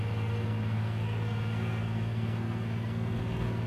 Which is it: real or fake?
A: fake